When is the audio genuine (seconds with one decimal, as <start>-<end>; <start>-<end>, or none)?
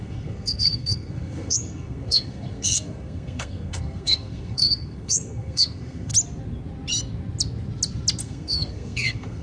6.1-8.2